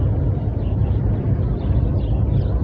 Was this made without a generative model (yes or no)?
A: yes